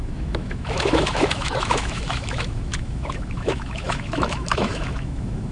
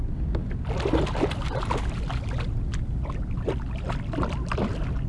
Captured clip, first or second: second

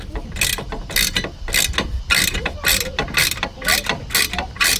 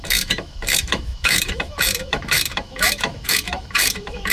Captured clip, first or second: first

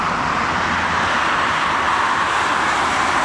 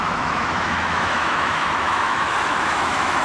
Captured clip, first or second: first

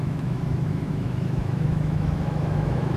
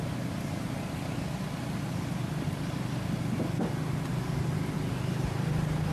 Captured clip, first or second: second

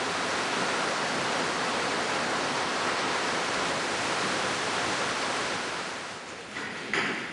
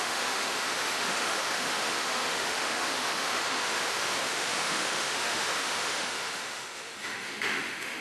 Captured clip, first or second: first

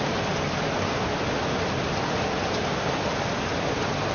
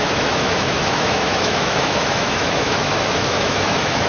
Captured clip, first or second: first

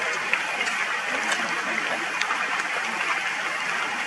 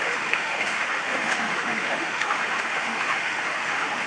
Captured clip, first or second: first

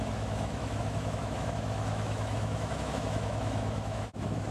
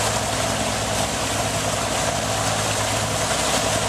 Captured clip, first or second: second